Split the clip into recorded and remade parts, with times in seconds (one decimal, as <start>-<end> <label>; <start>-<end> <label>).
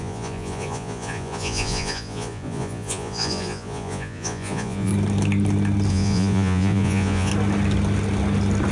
0.0-4.9 remade; 4.9-5.9 recorded; 5.9-7.3 remade; 7.3-8.7 recorded